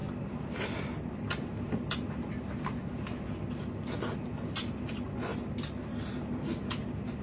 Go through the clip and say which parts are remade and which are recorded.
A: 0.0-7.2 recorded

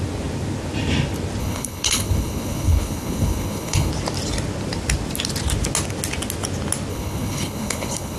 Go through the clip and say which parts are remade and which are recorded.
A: 0.0-1.4 recorded; 1.4-3.9 remade; 3.9-6.9 recorded; 6.9-8.2 remade

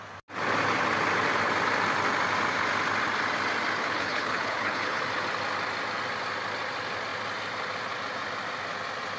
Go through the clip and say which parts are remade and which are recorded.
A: 0.0-3.8 recorded; 3.8-5.0 remade; 5.0-9.2 recorded

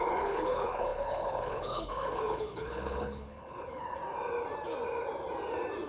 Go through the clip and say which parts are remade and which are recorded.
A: 0.0-4.0 remade; 4.0-5.9 recorded